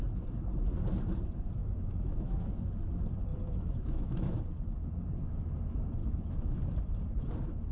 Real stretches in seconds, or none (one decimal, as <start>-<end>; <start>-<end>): 0.0-1.6; 2.5-3.3; 4.4-6.0; 6.6-7.7